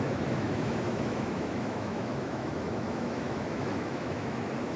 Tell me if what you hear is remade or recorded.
remade